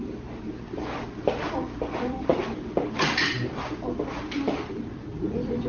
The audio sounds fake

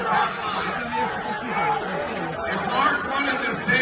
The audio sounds real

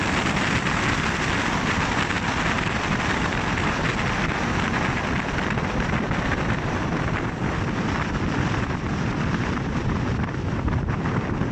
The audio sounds real